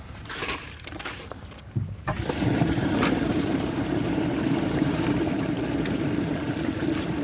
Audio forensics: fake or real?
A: fake